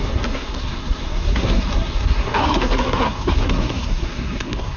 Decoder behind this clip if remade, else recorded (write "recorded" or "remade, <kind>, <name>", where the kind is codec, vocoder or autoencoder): remade, codec, SNAC